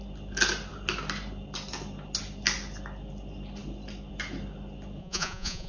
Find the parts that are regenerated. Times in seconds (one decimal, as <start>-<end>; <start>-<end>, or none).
5.0-5.7